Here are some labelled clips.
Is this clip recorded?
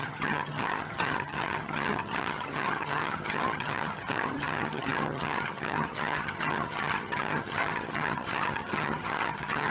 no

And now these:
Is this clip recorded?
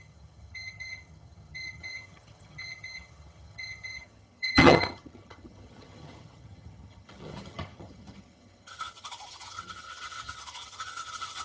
no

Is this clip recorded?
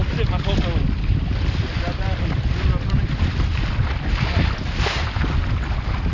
yes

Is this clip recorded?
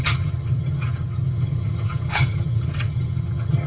no